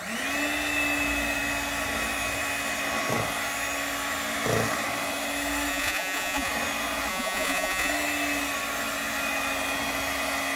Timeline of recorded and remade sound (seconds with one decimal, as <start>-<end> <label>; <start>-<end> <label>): 0.0-5.7 recorded; 5.7-6.5 remade; 6.5-7.1 recorded; 7.1-7.9 remade; 7.9-10.6 recorded